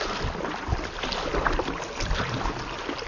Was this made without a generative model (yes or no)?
yes